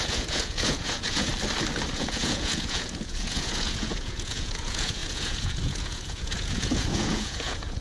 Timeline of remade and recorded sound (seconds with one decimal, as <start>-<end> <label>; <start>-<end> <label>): 0.0-1.3 remade; 1.3-1.9 recorded; 1.9-7.8 remade

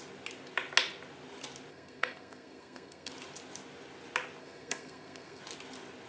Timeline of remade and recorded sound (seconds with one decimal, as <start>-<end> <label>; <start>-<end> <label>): 0.0-1.7 recorded; 1.7-3.1 remade; 3.1-4.4 recorded; 4.4-5.4 remade; 5.4-6.1 recorded

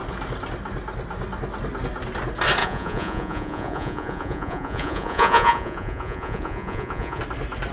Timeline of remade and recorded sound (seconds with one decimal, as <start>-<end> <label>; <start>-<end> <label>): 0.0-2.6 recorded; 2.6-7.2 remade; 7.2-7.7 recorded

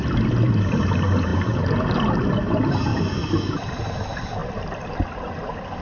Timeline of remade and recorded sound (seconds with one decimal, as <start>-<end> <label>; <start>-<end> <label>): 0.0-4.4 recorded; 4.4-4.9 remade; 4.9-5.8 recorded

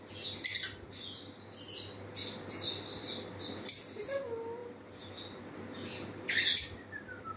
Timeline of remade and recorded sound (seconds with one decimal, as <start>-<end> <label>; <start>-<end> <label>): 0.0-7.4 recorded

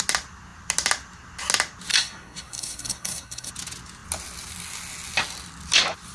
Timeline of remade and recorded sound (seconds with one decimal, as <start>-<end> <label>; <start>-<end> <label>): 0.0-1.9 recorded; 1.9-3.5 remade; 3.5-6.1 recorded